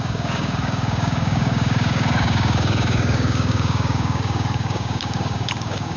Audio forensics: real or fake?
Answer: fake